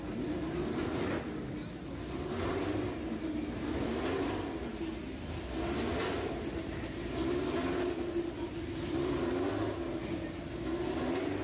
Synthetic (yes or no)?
no